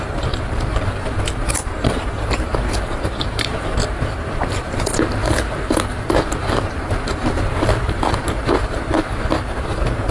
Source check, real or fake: fake